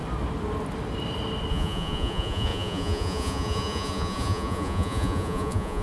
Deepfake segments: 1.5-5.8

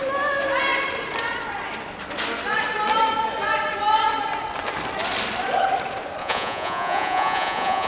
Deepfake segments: 6.2-7.9